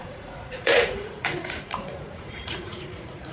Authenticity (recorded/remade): remade